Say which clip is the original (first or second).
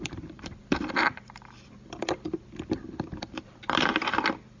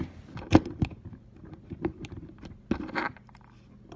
second